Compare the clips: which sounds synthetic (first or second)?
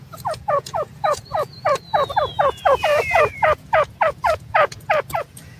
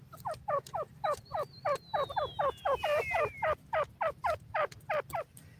first